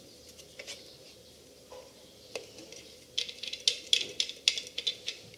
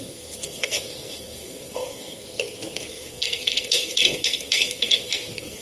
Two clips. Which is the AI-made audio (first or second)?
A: second